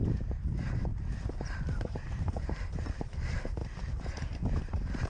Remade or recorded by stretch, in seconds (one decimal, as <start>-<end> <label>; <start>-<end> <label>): 0.0-3.6 remade; 3.6-4.6 recorded; 4.6-5.1 remade